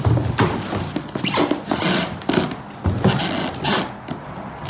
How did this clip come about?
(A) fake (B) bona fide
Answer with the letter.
B